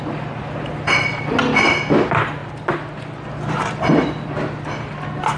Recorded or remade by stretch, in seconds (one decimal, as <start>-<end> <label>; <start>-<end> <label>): 0.0-5.4 recorded